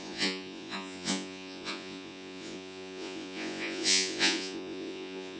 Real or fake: fake